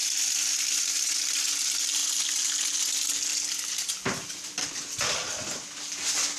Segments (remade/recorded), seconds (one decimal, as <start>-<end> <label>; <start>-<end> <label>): 0.0-6.4 recorded

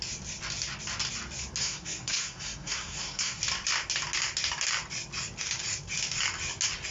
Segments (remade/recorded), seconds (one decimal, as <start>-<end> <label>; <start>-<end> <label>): 0.0-1.6 recorded; 1.6-3.4 remade; 3.4-6.9 recorded

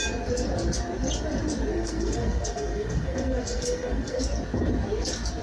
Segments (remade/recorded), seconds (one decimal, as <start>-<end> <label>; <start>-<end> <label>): 0.0-1.7 recorded; 1.7-4.2 remade; 4.2-5.4 recorded

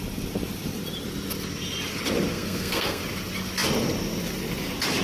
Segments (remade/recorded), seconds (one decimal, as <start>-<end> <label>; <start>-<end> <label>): 0.0-2.3 recorded; 2.3-3.0 remade; 3.0-5.0 recorded

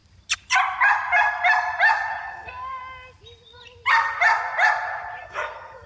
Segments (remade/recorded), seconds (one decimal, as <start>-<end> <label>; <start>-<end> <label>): 0.0-2.2 recorded; 2.2-2.8 remade; 2.8-5.2 recorded; 5.2-5.9 remade

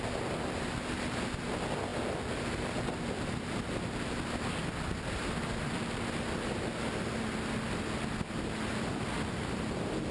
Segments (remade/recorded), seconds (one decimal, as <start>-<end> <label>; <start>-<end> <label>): 0.0-10.1 recorded

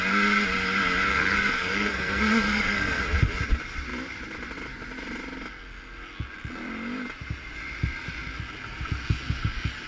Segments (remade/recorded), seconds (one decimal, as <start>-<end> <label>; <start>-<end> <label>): 0.0-1.1 recorded; 1.1-3.0 remade; 3.0-9.9 recorded

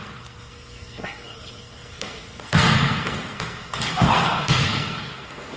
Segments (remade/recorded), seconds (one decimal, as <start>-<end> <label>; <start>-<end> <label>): 0.0-5.6 remade